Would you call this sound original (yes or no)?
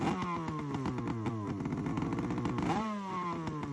yes